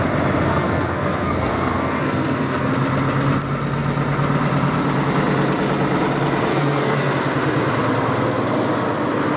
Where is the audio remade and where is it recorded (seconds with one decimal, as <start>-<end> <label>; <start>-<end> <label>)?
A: 0.0-0.5 recorded; 0.5-2.7 remade; 2.7-6.5 recorded; 6.5-7.1 remade; 7.1-9.4 recorded